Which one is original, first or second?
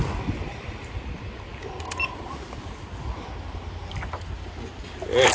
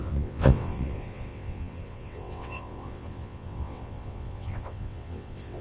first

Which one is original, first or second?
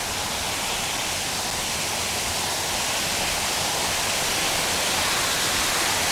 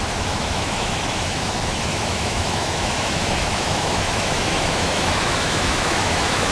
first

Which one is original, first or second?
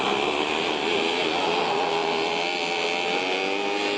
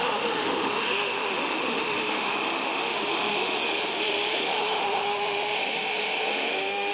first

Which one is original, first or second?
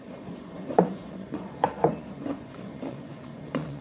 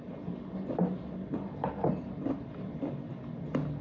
second